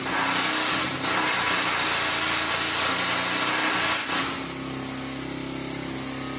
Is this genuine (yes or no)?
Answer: yes